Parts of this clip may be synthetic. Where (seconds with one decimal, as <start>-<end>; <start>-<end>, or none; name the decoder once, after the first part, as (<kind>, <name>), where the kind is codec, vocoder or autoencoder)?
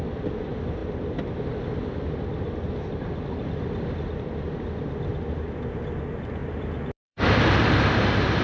6.4-8.4 (vocoder, BigVGAN v2)